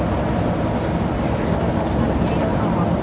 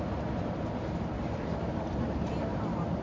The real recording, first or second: first